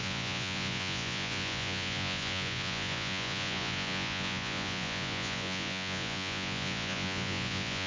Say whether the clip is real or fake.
fake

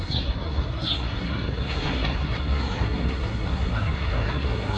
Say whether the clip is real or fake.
fake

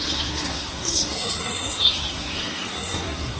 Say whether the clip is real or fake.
fake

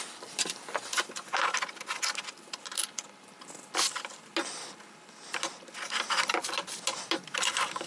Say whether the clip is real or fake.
real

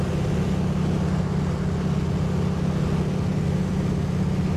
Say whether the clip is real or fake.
real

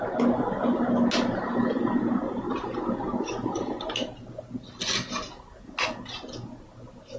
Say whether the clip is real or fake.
real